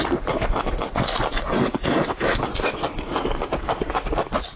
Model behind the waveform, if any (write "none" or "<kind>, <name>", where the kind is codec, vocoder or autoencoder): none